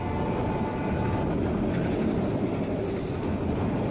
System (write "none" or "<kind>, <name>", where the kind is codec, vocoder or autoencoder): none